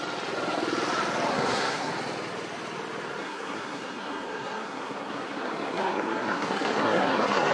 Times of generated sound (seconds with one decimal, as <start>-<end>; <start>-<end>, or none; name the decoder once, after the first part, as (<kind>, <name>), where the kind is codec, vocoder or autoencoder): 1.3-1.9 (codec, SNAC); 3.2-7.5